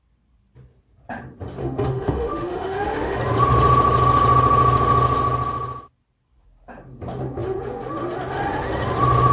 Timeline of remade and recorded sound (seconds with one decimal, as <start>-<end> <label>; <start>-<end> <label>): 0.0-1.6 recorded; 1.6-3.2 remade; 3.2-9.3 recorded